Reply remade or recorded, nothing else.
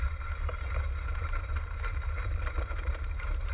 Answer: recorded